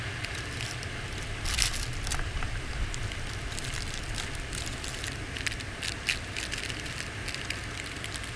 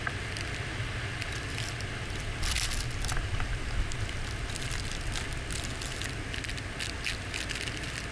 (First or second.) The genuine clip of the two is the second